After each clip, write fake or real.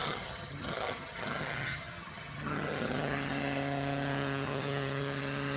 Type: fake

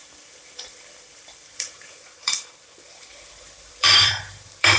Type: fake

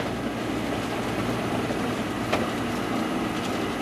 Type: real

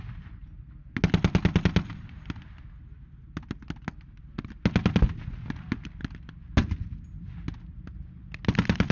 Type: real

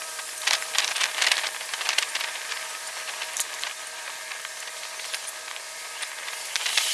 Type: fake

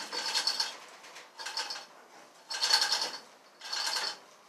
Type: real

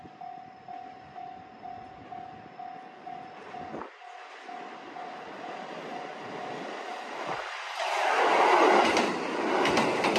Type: real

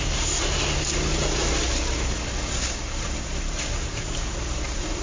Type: real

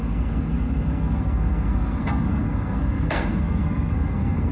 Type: fake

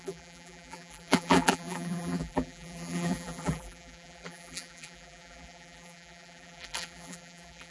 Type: fake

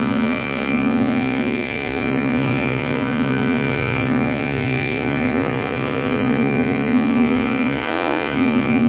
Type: fake